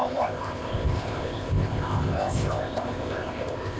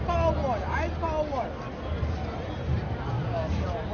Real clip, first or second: second